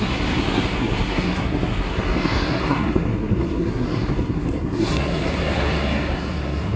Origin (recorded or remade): remade